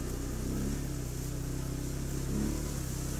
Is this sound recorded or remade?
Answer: recorded